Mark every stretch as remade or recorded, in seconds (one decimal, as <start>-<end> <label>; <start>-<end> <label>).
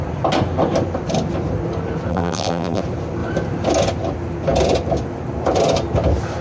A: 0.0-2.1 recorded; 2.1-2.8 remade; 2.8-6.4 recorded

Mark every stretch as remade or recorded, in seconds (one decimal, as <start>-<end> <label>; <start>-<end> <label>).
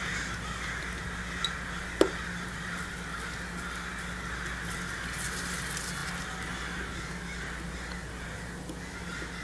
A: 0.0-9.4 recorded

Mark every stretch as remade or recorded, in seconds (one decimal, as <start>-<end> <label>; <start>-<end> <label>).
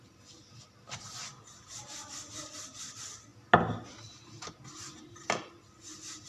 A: 0.0-6.3 recorded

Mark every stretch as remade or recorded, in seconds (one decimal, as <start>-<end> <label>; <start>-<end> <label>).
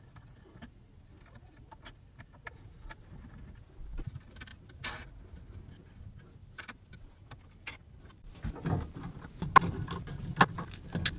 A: 0.0-11.2 recorded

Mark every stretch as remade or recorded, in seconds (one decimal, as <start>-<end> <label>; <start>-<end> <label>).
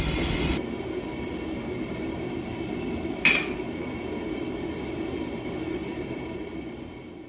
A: 0.0-2.5 recorded; 2.5-3.4 remade; 3.4-5.8 recorded; 5.8-6.4 remade; 6.4-7.3 recorded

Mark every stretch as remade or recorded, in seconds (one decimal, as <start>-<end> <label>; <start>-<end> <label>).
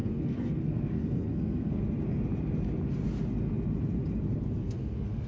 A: 0.0-1.8 remade; 1.8-4.6 recorded; 4.6-5.3 remade